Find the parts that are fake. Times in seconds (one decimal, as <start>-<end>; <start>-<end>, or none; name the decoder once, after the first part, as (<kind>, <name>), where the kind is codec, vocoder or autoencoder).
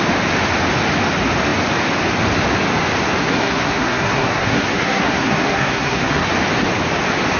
3.2-6.3 (codec, SNAC)